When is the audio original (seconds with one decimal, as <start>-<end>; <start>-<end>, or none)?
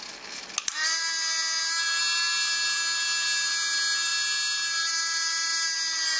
0.0-6.2